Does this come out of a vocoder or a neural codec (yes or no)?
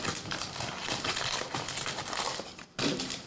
yes